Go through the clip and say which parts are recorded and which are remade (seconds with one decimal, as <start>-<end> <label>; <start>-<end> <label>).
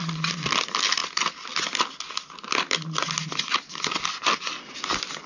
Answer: 0.0-5.3 recorded